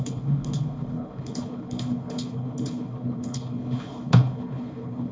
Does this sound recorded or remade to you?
remade